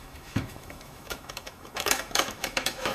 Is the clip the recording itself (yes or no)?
no